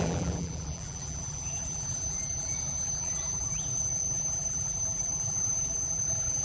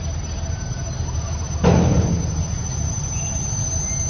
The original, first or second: second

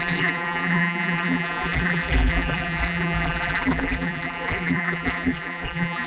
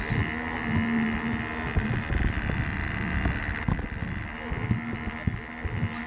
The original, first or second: second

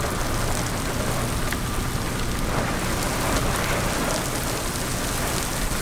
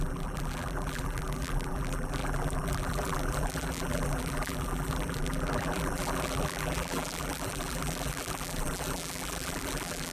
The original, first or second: first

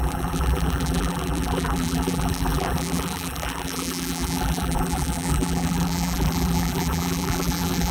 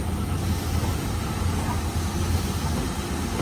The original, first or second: second